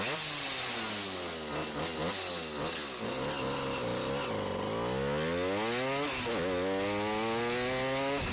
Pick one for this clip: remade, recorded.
recorded